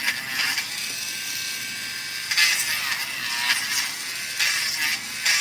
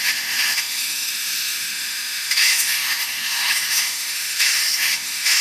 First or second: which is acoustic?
first